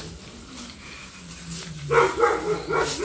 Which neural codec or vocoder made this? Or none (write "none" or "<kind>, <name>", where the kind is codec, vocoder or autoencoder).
none